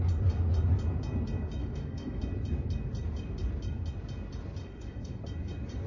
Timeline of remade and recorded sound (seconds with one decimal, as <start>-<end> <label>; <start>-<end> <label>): 0.0-1.6 recorded; 1.6-2.2 remade; 2.2-4.6 recorded; 4.6-5.2 remade; 5.2-5.9 recorded